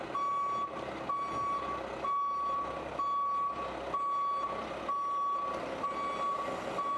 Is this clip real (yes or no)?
yes